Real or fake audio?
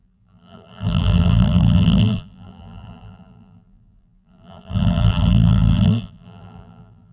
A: fake